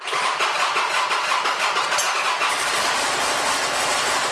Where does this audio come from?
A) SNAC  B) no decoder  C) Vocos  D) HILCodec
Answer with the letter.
B